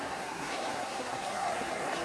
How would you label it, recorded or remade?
remade